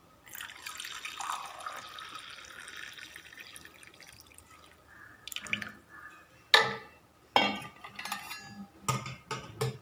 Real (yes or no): yes